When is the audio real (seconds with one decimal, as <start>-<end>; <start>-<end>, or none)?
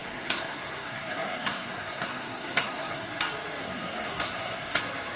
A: 3.1-3.6; 4.8-5.2